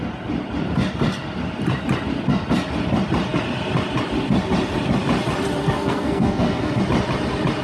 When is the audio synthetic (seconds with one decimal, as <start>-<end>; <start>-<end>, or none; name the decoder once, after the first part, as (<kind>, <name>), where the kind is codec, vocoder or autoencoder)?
5.6-6.8 (codec, SNAC)